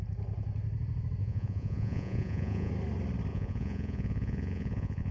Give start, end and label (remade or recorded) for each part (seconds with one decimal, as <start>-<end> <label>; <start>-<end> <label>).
0.0-1.2 recorded; 1.2-2.7 remade; 2.7-3.3 recorded; 3.3-5.1 remade